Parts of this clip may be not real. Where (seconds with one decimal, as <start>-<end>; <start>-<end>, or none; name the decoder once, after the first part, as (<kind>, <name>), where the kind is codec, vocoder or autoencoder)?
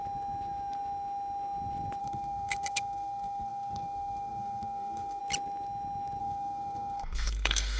2.0-5.2 (codec, SNAC); 6.2-7.8